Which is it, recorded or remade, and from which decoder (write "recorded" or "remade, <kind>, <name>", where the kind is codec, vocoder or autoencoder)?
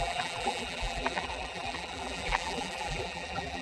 remade, vocoder, BigVGAN v2